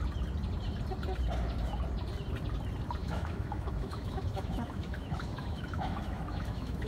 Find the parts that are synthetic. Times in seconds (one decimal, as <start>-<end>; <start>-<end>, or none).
3.0-6.9